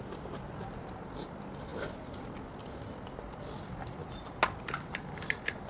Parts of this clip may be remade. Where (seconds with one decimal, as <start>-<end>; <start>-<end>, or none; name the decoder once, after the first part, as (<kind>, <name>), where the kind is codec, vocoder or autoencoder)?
none